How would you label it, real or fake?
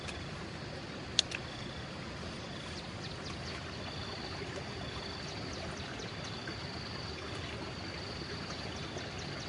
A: real